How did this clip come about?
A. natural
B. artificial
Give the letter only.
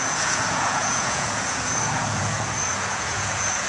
B